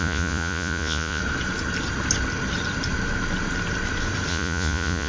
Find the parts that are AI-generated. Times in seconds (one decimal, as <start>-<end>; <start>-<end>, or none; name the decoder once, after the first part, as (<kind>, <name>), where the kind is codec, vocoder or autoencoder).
0.0-1.2 (vocoder, Vocos); 4.3-5.1